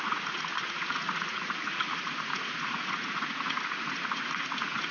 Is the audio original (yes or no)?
no